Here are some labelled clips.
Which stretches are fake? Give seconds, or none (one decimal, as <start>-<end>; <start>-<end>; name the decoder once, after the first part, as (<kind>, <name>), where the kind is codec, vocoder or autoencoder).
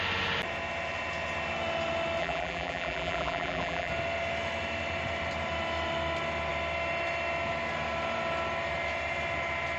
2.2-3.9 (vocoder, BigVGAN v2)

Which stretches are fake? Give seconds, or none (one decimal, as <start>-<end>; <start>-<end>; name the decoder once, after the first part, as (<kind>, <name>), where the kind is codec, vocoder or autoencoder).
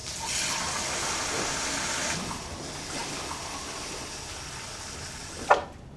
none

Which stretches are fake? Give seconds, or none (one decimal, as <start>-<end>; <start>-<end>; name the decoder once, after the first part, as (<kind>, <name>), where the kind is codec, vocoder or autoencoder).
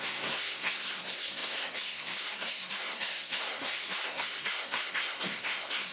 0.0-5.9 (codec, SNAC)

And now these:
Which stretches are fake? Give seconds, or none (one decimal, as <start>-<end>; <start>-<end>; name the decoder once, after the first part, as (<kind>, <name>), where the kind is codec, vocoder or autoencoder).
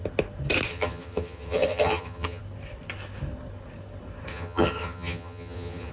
0.7-2.4 (vocoder, HiFi-GAN); 4.3-5.9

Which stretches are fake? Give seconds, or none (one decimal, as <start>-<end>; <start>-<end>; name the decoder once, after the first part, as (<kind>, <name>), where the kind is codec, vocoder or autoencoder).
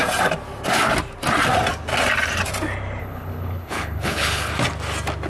3.0-4.5 (codec, HILCodec)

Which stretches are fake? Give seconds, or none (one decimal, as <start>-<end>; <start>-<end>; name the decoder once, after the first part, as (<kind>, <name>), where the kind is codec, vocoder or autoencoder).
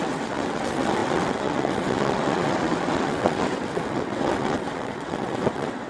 0.0-5.9 (vocoder, WaveNeXt)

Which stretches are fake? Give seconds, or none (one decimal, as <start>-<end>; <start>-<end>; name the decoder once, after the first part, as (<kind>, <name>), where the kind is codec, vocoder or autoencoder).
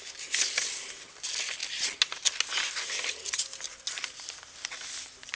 none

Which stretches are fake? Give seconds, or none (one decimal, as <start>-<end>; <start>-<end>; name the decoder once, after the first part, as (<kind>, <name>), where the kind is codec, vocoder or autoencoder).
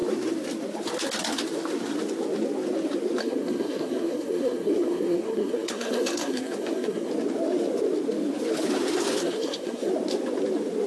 3.2-7.1 (codec, SNAC); 9.2-9.9